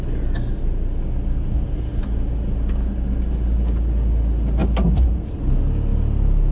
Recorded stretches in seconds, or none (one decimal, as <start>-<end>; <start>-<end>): 0.0-6.5

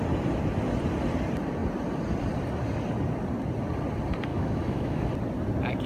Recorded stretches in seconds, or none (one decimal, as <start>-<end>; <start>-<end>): 0.0-4.3; 5.1-5.9

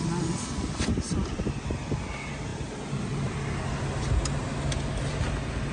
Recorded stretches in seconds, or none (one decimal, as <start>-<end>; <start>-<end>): 0.0-5.7

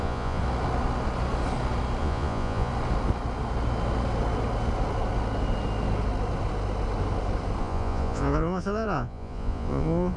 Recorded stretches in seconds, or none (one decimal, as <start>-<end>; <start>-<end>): 0.4-2.0; 2.7-7.6